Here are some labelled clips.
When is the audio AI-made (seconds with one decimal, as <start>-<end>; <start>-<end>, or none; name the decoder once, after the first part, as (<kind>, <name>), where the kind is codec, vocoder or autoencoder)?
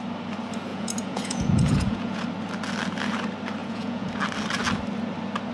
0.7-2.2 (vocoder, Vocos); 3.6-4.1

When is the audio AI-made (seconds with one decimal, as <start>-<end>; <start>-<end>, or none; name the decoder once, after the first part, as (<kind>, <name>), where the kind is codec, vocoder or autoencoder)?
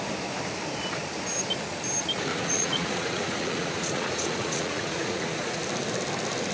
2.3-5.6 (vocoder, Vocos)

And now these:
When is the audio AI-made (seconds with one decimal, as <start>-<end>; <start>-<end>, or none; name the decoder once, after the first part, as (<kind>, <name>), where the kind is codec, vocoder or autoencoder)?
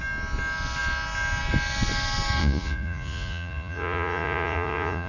2.4-5.1 (vocoder, Vocos)